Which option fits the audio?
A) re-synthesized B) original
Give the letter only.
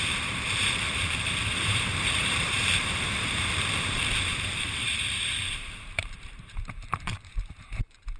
A